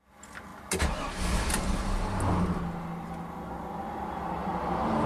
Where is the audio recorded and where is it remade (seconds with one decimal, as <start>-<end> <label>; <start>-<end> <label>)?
0.0-5.1 recorded